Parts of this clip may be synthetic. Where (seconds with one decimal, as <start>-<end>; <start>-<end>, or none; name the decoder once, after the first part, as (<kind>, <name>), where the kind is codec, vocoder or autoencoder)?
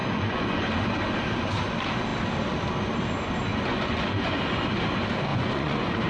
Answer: 0.0-0.7 (vocoder, Vocos); 3.5-4.4; 5.3-6.1